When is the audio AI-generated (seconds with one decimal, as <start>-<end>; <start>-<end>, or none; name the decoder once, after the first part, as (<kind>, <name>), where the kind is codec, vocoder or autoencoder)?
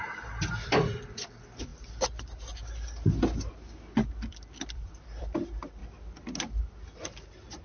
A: 0.0-1.7 (vocoder, BigVGAN v2); 4.3-5.8; 6.6-7.6